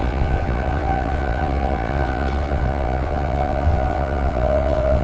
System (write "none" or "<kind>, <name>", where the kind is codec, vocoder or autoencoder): vocoder, WaveNeXt